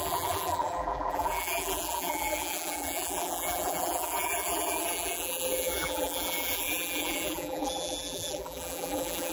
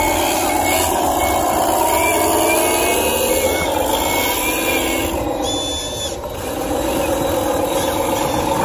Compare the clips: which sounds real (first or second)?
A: second